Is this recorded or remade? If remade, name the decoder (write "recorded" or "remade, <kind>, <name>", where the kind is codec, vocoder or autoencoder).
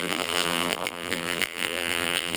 remade, vocoder, BigVGAN v2